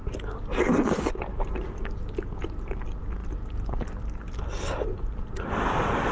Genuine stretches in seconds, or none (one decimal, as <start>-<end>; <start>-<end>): 0.0-6.1